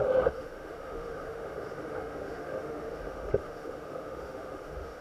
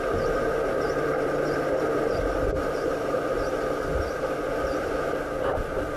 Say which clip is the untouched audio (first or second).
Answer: second